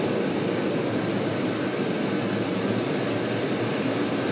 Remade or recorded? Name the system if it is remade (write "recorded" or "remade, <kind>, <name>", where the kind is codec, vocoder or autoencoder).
recorded